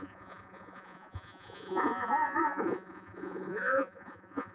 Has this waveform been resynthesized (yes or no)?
yes